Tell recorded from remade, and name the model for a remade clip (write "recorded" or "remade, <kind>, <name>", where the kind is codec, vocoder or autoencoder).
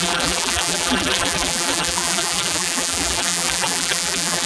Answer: remade, vocoder, BigVGAN v2